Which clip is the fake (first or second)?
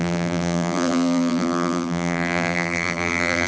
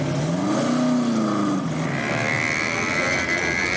first